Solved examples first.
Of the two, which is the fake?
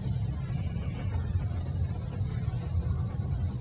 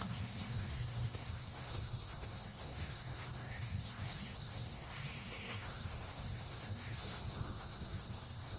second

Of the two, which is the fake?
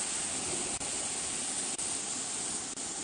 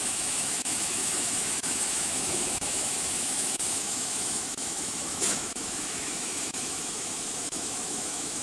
second